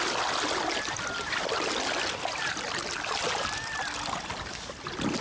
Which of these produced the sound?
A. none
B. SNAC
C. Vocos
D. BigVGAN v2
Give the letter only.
A